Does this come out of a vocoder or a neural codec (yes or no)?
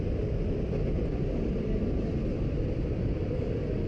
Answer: yes